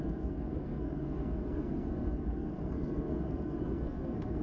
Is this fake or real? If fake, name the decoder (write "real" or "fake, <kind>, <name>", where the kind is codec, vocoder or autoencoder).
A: fake, codec, SNAC